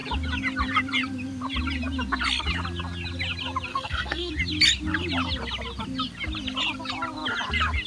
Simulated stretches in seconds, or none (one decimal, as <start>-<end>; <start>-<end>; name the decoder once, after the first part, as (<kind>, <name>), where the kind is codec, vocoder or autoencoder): 3.7-4.3 (codec, SNAC)